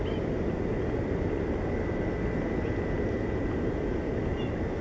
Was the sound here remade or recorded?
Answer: recorded